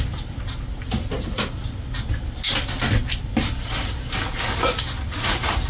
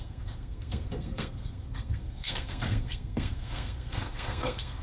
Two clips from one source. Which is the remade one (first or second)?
second